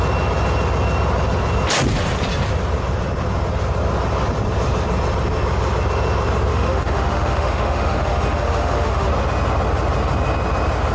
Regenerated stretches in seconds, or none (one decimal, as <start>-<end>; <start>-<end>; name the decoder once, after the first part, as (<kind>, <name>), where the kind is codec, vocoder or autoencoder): 6.5-9.1 (autoencoder, DAC-VAE)